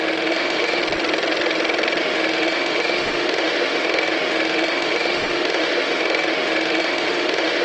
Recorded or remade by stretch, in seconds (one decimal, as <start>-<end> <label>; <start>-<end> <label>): 0.0-0.8 remade; 0.8-2.0 recorded; 2.0-7.6 remade